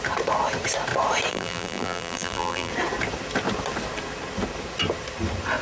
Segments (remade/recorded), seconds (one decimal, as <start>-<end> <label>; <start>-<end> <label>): 0.0-1.3 recorded; 1.3-2.7 remade; 2.7-5.6 recorded